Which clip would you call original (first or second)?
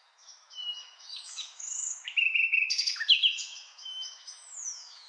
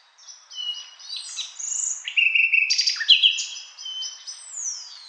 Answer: second